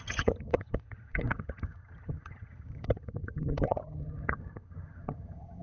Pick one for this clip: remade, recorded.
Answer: remade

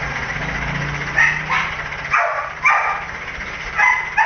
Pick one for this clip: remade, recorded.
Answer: recorded